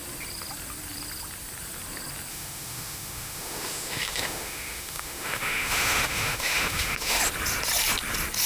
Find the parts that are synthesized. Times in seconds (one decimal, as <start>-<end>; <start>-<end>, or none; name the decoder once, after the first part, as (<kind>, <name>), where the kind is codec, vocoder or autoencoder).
2.3-7.2 (autoencoder, DAC-VAE)